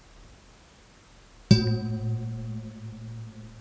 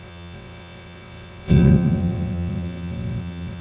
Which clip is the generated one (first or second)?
second